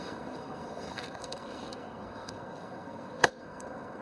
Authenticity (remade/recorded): remade